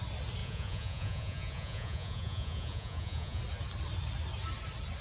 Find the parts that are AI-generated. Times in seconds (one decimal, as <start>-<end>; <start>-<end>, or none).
0.4-3.4